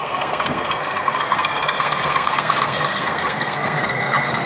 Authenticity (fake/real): fake